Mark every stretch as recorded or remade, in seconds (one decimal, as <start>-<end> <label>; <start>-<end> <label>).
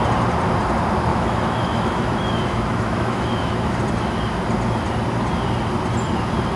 0.0-1.1 recorded; 1.1-3.8 remade; 3.8-6.6 recorded